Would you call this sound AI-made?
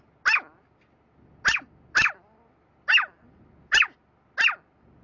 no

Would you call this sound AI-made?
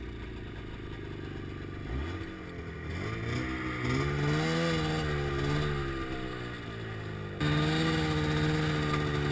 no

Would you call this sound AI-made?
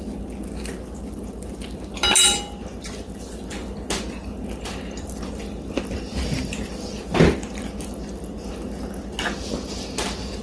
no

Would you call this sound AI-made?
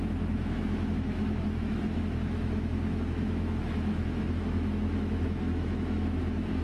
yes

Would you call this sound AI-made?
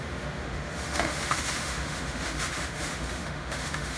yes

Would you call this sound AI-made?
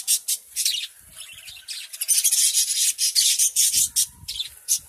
no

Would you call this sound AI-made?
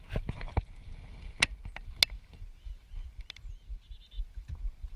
no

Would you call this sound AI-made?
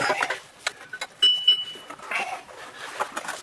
no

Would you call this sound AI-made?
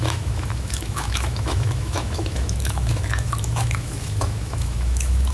yes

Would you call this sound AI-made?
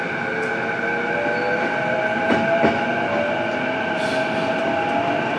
no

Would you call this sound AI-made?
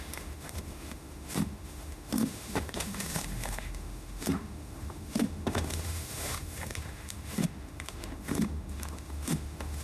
yes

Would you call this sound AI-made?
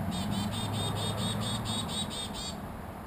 no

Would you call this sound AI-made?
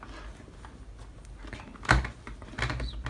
no